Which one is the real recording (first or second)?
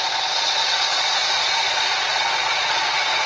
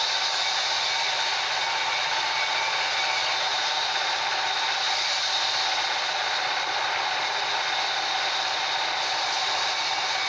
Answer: second